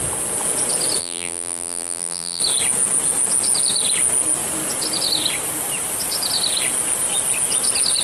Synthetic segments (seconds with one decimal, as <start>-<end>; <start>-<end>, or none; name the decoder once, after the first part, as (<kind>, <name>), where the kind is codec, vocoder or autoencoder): 1.0-2.4 (vocoder, BigVGAN v2)